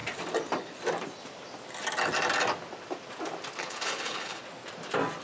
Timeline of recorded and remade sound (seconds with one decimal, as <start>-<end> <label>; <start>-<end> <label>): 0.0-3.6 recorded; 3.6-4.4 remade; 4.4-5.2 recorded